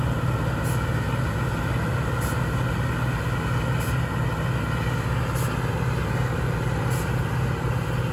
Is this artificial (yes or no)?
no